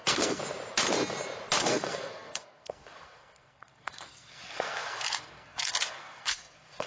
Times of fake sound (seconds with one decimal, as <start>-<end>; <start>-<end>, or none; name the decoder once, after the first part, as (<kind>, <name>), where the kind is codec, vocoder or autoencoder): 0.0-0.4 (codec, SNAC); 1.6-6.9